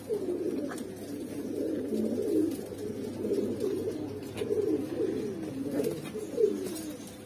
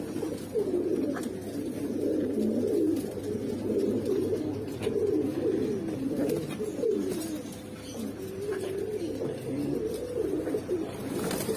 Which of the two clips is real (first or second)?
first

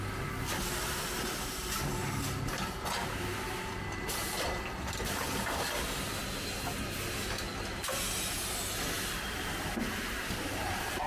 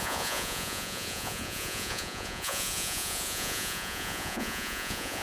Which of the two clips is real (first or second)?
first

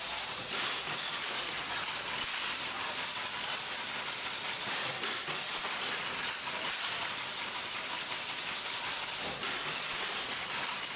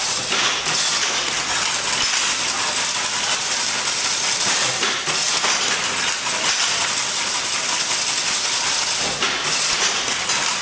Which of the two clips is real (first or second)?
second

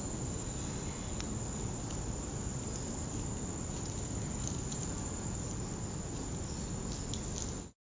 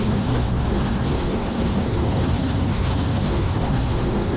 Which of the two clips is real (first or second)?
first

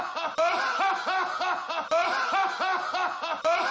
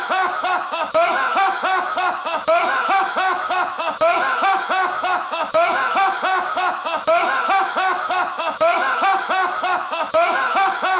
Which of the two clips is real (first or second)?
first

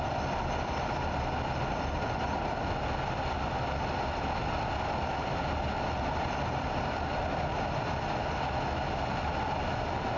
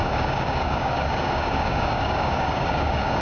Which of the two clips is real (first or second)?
first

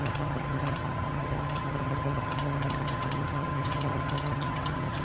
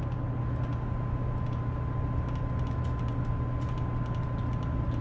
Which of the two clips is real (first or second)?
second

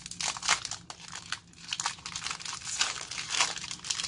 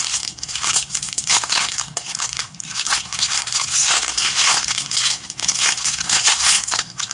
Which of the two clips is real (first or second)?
first